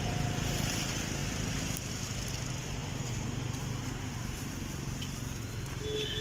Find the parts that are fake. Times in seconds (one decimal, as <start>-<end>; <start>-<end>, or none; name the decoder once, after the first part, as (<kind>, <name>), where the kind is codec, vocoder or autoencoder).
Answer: none